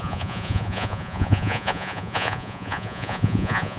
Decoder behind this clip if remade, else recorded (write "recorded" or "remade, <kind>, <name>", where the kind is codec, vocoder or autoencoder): remade, vocoder, Vocos